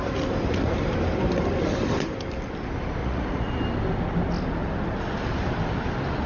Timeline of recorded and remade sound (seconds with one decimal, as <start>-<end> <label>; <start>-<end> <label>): 0.0-3.0 recorded; 3.0-3.6 remade; 3.6-6.3 recorded